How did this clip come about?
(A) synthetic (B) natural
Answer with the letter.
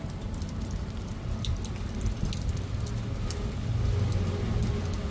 B